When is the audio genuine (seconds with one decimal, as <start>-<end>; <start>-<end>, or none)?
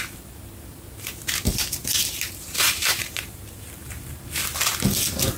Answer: 0.0-1.8; 4.3-5.4